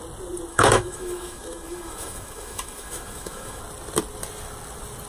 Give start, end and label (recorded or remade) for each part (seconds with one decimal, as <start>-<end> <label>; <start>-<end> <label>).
0.0-0.5 recorded; 0.5-3.6 remade; 3.6-5.1 recorded